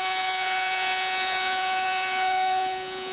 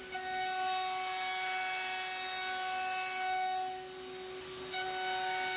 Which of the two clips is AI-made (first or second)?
first